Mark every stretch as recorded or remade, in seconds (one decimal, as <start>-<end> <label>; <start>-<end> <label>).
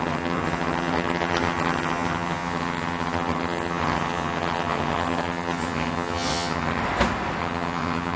0.0-6.8 remade; 6.8-7.4 recorded; 7.4-8.2 remade